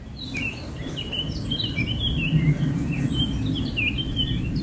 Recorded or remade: remade